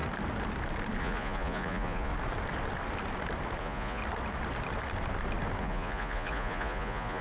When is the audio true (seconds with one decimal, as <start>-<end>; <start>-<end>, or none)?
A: 0.0-1.0; 2.1-3.6; 4.0-5.6